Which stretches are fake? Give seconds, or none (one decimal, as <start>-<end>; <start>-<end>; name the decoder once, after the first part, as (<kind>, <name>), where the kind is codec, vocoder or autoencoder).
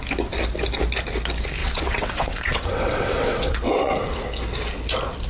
1.6-4.2 (vocoder, WaveNeXt)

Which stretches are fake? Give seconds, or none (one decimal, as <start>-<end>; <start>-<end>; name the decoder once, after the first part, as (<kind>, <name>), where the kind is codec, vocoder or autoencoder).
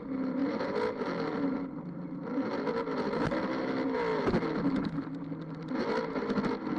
none